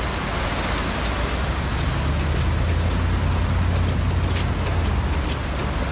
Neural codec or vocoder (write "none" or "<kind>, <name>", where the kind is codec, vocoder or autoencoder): none